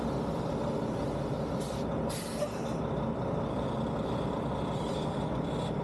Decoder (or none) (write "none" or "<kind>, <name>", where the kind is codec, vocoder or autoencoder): none